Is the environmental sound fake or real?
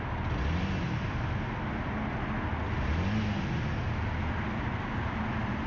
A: real